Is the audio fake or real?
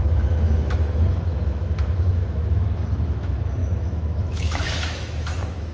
fake